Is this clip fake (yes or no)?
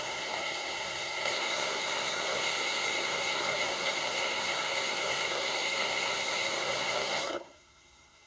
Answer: yes